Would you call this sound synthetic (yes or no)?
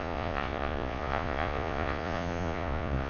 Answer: yes